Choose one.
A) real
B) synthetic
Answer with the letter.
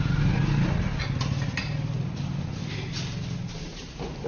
A